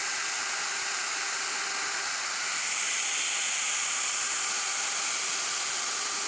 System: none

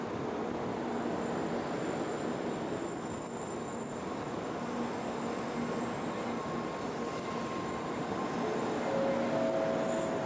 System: none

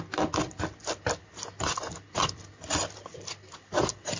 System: none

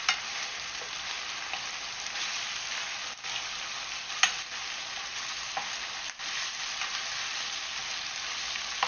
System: none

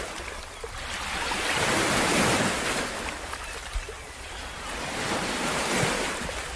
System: none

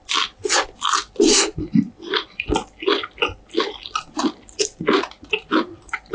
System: none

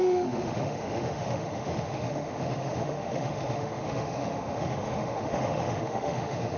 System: autoencoder, DAC-VAE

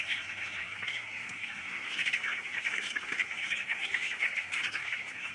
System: codec, SNAC